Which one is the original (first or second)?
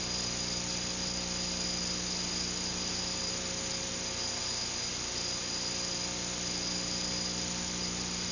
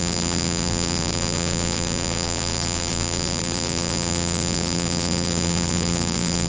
first